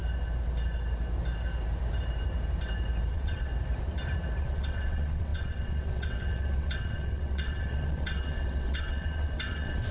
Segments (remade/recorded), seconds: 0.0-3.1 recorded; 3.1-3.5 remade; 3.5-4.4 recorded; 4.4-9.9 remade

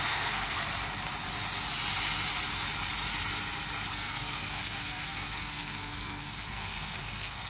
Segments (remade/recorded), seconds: 0.0-0.6 remade; 0.6-3.9 recorded; 3.9-7.5 remade